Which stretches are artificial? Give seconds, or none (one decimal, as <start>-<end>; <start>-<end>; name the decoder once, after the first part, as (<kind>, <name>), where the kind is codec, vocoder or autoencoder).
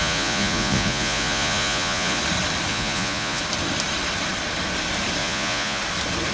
0.0-2.2 (vocoder, Vocos); 2.7-3.4; 5.2-5.8